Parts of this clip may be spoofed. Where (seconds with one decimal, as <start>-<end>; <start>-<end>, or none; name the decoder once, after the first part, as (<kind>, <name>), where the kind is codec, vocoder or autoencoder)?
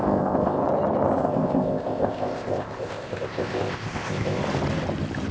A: 0.0-0.6 (codec, ZipCodec); 1.2-4.4